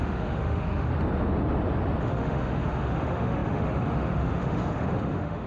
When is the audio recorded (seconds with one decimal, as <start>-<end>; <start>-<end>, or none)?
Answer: 0.9-2.0